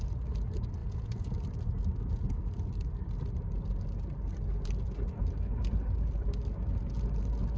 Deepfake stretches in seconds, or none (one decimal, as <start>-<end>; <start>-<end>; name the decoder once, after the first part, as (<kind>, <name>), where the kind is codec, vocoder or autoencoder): 0.8-1.3 (vocoder, Vocos)